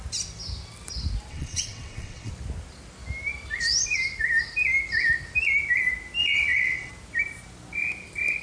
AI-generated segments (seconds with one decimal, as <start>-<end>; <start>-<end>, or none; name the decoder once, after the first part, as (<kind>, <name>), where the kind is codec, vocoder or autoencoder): 1.3-2.3 (vocoder, WaveNeXt); 6.2-6.9

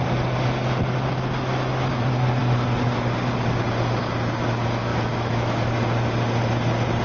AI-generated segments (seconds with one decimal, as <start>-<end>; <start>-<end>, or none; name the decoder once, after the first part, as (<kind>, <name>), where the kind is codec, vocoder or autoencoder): 4.9-5.7 (autoencoder, DAC-VAE)